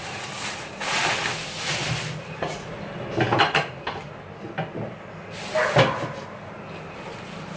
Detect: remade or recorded recorded